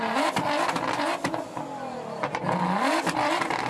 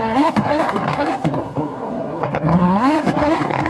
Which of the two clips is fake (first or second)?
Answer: second